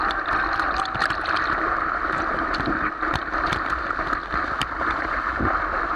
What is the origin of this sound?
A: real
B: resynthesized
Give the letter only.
A